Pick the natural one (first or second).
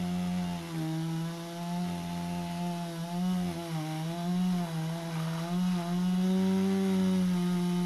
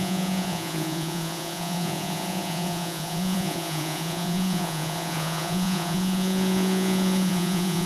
first